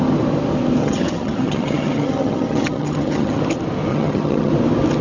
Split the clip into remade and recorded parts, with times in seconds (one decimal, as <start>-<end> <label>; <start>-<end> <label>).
0.0-0.8 recorded; 0.8-3.4 remade; 3.4-3.9 recorded; 3.9-4.5 remade; 4.5-5.0 recorded